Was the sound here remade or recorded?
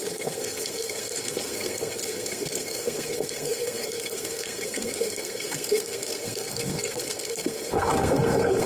remade